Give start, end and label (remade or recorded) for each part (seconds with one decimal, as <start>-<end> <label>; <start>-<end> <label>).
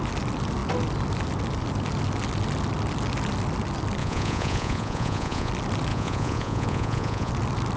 0.0-4.0 recorded; 4.0-5.5 remade; 5.5-5.9 recorded; 5.9-7.3 remade; 7.3-7.8 recorded